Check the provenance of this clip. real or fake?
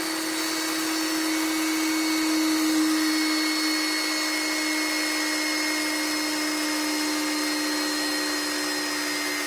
real